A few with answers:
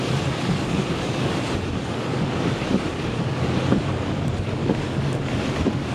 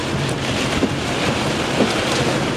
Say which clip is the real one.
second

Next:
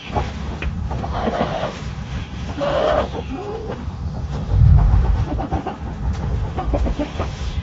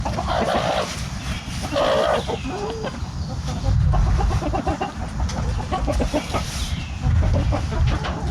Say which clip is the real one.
second